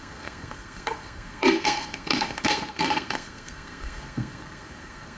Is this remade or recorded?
remade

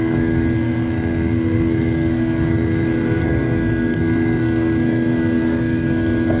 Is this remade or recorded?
remade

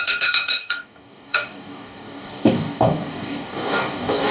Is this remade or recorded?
remade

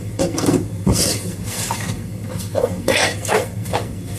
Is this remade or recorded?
remade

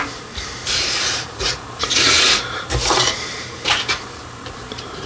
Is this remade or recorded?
remade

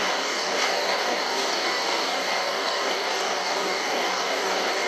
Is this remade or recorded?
remade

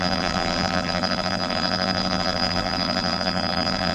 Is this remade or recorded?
remade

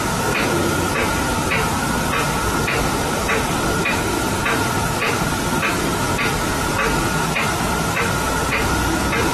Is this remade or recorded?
remade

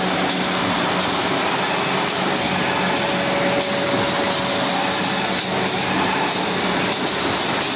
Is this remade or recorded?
recorded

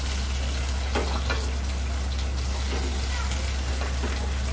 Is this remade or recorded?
recorded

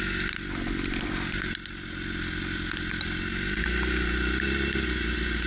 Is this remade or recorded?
recorded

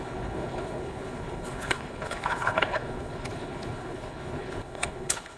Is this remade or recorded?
remade